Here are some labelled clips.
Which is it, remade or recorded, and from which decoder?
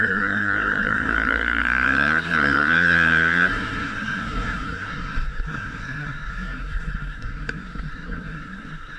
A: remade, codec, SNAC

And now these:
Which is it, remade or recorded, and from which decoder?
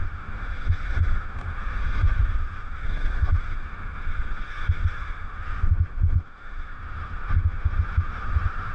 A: remade, autoencoder, DAC-VAE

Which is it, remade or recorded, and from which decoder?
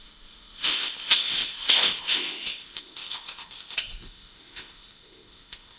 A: remade, codec, ZipCodec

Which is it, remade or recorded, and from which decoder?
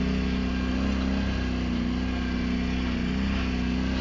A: recorded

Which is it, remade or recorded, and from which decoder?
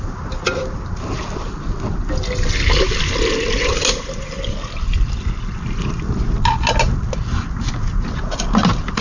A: recorded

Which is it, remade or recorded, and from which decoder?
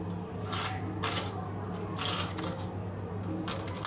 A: recorded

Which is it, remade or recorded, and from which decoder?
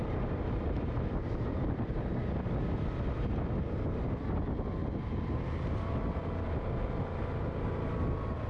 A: recorded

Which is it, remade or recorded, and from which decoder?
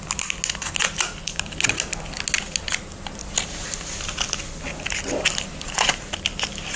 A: recorded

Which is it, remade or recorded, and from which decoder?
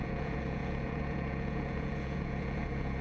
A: remade, vocoder, Vocos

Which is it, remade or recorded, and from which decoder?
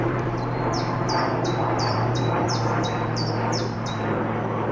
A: remade, vocoder, BigVGAN v2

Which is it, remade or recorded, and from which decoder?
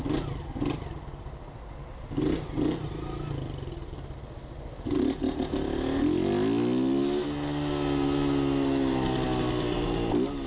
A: recorded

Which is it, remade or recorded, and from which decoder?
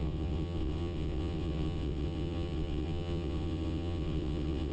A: remade, vocoder, WaveNeXt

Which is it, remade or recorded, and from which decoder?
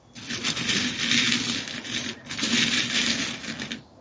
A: recorded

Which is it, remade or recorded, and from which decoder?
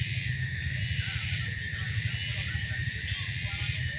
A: recorded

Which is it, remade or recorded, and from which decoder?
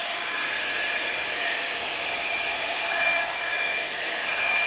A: remade, codec, DAC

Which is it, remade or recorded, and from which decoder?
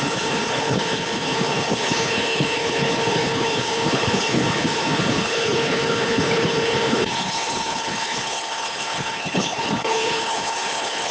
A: remade, codec, HILCodec